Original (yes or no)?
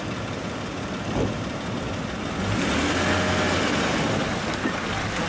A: yes